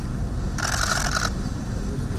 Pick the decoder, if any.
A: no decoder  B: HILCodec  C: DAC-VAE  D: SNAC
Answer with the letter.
A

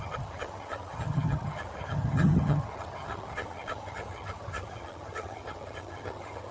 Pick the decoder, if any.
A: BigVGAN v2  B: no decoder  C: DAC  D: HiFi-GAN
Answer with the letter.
D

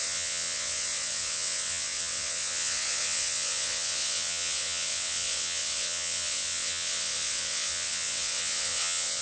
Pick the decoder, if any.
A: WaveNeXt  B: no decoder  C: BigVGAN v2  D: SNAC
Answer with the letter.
A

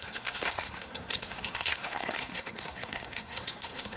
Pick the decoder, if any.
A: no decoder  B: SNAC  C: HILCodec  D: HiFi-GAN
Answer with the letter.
B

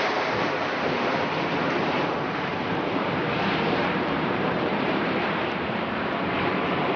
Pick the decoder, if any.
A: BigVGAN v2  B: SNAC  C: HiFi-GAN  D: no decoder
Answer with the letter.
A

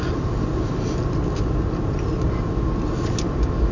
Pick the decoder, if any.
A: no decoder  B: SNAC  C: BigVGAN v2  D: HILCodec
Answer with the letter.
A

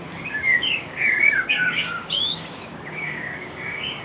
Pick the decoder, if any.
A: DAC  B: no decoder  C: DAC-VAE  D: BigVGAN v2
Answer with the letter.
A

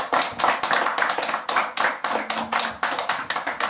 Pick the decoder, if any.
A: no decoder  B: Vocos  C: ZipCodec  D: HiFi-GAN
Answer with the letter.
A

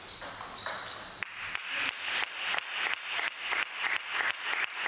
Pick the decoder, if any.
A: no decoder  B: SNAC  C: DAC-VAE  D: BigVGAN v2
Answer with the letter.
A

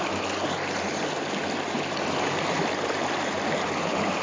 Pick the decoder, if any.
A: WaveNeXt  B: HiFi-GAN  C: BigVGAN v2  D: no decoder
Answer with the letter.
D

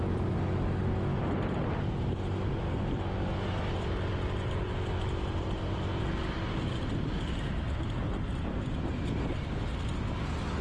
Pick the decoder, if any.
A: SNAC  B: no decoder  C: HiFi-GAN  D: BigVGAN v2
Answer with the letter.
B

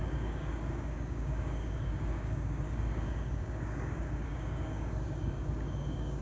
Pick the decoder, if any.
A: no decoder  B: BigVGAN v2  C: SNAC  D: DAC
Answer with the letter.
D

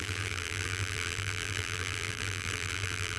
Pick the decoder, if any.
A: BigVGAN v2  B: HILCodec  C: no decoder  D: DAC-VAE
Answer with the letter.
A